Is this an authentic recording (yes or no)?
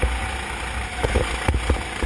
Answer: yes